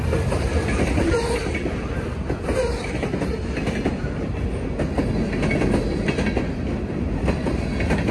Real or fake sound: real